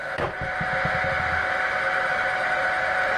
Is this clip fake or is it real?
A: real